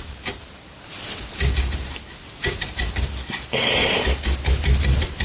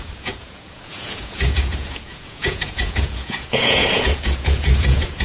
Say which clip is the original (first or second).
first